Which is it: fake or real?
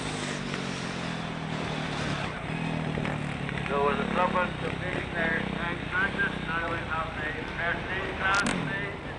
real